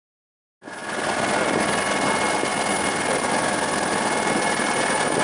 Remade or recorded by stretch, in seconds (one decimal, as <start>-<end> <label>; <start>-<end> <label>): 0.0-5.2 recorded